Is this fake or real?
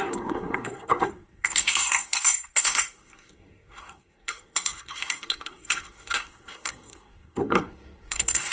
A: fake